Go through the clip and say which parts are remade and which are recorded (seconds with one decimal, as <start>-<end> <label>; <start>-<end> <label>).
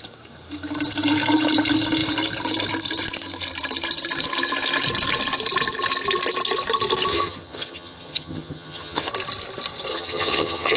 0.0-7.1 recorded; 7.1-9.1 remade; 9.1-9.9 recorded; 9.9-10.8 remade